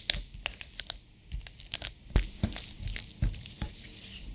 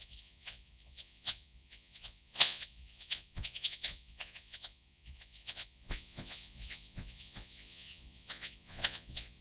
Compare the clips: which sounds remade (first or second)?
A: second